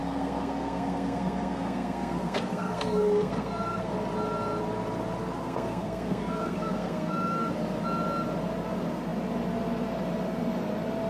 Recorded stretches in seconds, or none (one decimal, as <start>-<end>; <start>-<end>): 3.9-5.4; 7.5-11.1